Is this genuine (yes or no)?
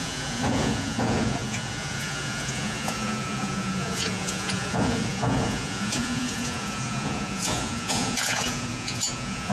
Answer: no